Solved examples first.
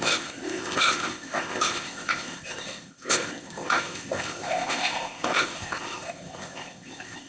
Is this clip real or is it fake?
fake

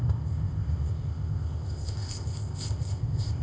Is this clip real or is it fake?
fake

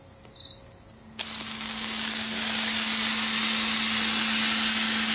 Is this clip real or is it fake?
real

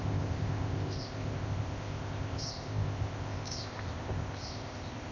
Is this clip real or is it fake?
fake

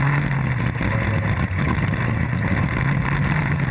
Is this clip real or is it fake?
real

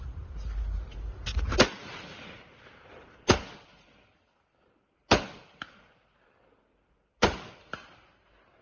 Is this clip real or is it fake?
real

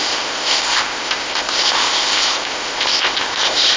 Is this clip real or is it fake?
fake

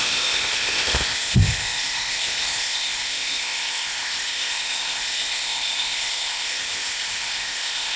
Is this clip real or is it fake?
fake